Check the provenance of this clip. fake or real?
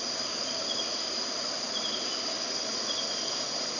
real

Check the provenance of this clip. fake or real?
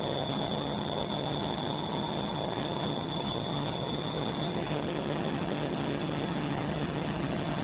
fake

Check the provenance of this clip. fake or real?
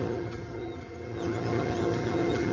fake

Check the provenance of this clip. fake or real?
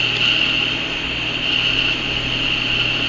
real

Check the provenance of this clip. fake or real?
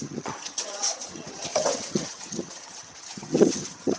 fake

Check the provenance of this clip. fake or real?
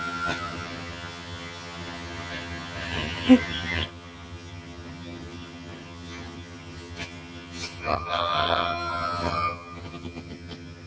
fake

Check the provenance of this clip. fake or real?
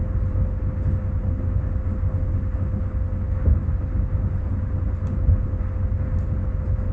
real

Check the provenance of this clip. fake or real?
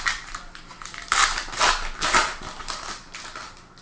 real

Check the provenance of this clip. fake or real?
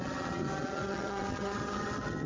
fake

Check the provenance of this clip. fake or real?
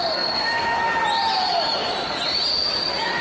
real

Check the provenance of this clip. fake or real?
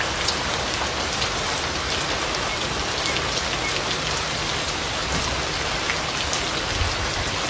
real